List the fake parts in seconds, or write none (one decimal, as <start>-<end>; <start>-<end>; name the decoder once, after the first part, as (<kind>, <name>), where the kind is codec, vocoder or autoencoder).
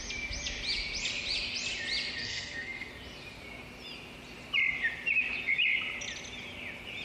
2.2-2.9 (codec, SNAC)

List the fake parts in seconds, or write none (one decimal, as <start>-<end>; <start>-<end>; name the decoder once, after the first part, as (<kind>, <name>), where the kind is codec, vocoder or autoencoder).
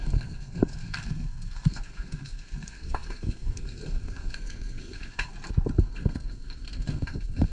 0.0-5.3 (codec, SNAC); 5.8-7.5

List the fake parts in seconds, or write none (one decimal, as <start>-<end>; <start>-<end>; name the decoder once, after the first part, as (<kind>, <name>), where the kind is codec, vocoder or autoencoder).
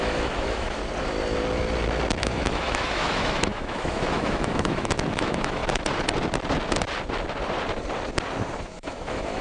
0.0-0.8 (autoencoder, DAC-VAE); 2.1-5.6; 8.6-9.4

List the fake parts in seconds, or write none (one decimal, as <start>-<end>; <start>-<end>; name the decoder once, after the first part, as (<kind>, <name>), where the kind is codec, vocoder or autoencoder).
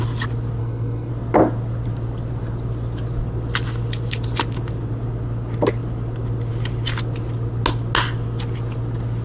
0.6-1.1 (codec, SNAC)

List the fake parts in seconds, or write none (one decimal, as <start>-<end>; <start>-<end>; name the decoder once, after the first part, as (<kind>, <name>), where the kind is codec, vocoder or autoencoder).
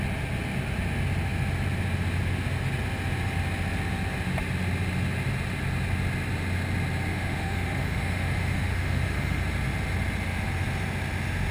7.1-9.4 (autoencoder, DAC-VAE)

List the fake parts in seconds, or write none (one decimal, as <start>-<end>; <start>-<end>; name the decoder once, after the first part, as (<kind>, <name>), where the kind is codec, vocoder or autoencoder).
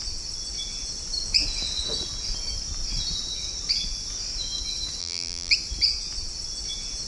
5.0-5.5 (vocoder, BigVGAN v2)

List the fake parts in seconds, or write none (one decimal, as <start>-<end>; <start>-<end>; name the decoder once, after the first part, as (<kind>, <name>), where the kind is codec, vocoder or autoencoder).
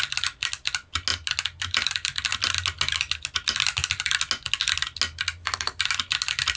none